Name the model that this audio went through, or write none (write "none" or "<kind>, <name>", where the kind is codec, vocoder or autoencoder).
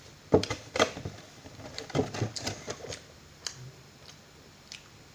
none